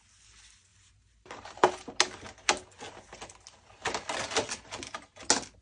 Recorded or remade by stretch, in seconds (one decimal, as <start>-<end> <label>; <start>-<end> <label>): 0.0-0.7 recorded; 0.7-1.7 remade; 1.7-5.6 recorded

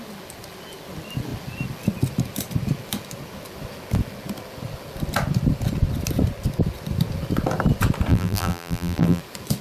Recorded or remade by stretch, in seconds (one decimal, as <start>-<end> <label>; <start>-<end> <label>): 0.0-8.1 recorded; 8.1-9.2 remade; 9.2-9.6 recorded

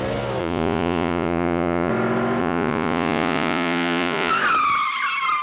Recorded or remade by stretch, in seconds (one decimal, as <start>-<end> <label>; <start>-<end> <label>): 0.0-0.4 recorded; 0.4-1.9 remade; 1.9-2.4 recorded; 2.4-4.3 remade; 4.3-5.4 recorded